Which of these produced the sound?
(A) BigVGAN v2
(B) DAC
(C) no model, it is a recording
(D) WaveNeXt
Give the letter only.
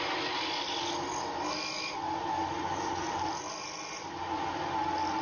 C